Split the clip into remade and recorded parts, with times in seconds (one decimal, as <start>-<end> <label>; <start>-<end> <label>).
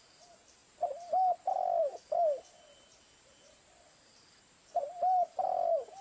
0.0-6.0 recorded